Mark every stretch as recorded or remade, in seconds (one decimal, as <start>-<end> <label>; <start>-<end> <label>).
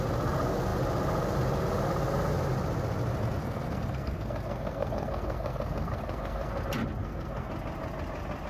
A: 0.0-3.4 recorded; 3.4-6.6 remade; 6.6-7.0 recorded; 7.0-7.5 remade; 7.5-8.5 recorded